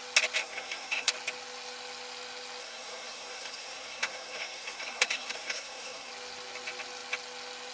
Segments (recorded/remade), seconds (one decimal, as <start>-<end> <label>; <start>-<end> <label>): 0.0-0.4 recorded; 0.4-1.1 remade; 1.1-2.6 recorded; 2.6-6.1 remade; 6.1-7.7 recorded